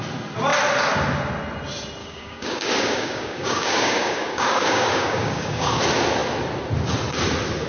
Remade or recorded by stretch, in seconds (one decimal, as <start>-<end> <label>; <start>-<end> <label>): 0.0-2.0 recorded; 2.0-5.8 remade; 5.8-7.7 recorded